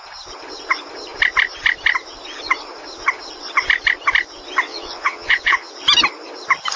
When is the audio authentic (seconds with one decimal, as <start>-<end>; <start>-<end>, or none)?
0.0-4.7; 5.7-6.8